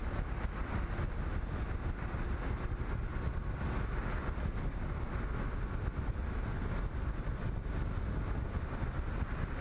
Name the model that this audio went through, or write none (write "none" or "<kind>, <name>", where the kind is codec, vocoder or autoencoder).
none